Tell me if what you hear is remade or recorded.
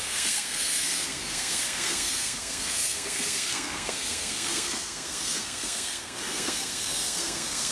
remade